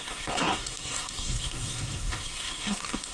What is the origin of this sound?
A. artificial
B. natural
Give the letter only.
A